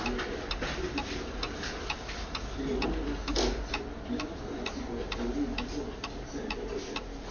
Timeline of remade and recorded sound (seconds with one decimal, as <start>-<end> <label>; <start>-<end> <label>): 0.0-7.3 recorded